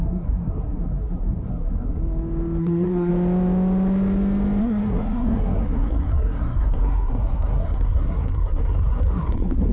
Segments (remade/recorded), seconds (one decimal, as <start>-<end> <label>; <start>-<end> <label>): 0.0-2.0 remade; 2.0-2.6 recorded; 2.6-3.1 remade; 3.1-4.6 recorded; 4.6-9.7 remade